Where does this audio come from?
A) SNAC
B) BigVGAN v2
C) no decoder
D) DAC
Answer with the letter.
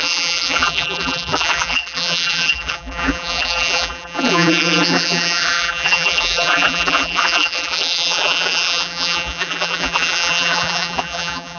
B